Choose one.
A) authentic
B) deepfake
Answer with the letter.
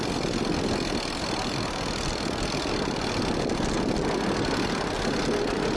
A